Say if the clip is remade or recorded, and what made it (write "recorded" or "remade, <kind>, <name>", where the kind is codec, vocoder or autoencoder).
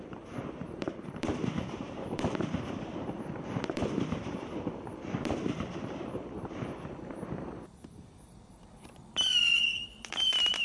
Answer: remade, vocoder, BigVGAN v2